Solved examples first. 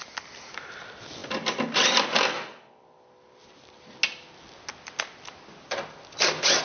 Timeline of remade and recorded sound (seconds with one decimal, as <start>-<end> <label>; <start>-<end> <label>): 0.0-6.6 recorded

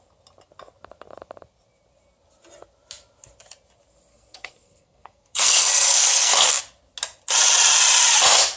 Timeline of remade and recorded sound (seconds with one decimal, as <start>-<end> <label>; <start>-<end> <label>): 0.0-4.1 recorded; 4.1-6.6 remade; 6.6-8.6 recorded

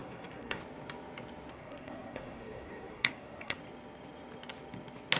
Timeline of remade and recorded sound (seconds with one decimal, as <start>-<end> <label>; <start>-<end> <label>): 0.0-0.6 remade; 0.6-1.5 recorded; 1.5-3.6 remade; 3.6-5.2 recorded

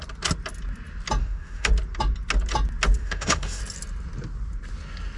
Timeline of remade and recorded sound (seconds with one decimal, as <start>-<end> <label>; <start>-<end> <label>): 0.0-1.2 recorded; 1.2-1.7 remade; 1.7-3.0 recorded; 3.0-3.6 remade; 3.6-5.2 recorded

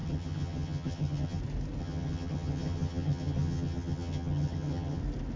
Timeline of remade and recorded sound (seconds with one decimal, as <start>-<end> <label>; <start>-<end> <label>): 0.0-1.4 remade; 1.4-1.8 recorded; 1.8-5.0 remade; 5.0-5.4 recorded